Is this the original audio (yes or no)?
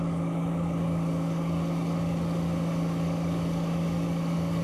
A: no